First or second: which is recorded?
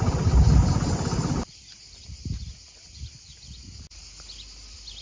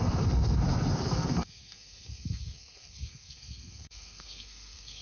first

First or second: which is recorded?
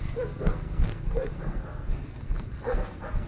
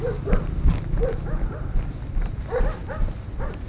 second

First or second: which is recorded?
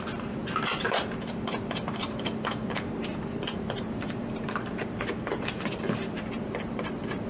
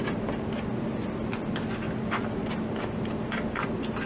second